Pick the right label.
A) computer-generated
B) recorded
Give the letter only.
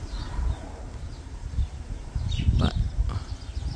B